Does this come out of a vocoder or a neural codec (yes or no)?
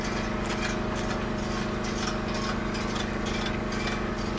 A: no